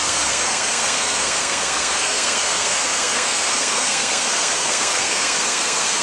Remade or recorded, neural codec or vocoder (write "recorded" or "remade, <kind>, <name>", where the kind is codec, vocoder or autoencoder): remade, codec, SNAC